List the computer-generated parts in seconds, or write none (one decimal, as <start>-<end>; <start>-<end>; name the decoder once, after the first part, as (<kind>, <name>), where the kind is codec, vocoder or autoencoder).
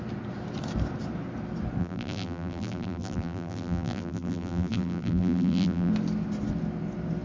1.8-5.9 (vocoder, BigVGAN v2)